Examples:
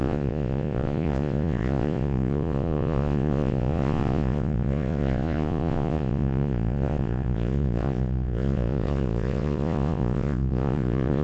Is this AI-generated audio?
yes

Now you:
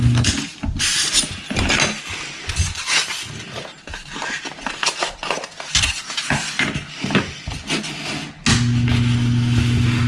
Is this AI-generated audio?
no